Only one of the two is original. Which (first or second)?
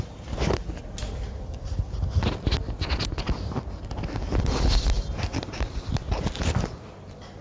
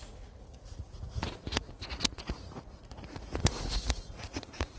first